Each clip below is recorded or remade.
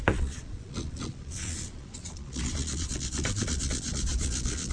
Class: remade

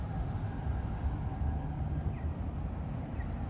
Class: recorded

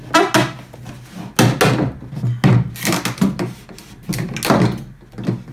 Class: recorded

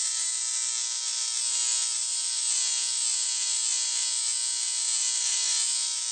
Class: recorded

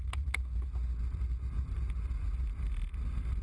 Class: recorded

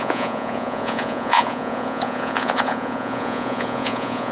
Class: remade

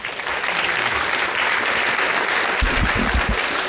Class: recorded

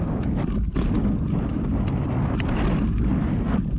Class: recorded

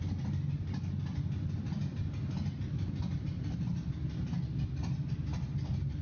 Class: recorded